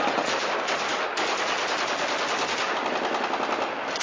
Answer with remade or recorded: recorded